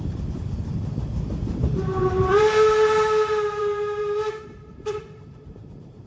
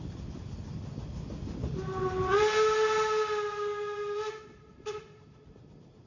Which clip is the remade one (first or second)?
first